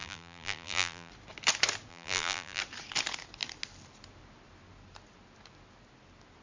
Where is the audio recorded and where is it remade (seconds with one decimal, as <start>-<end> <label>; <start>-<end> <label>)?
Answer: 0.0-1.1 remade; 1.1-1.9 recorded; 1.9-2.6 remade; 2.6-6.4 recorded